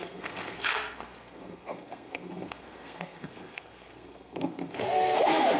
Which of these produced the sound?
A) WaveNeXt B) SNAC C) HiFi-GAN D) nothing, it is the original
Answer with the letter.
B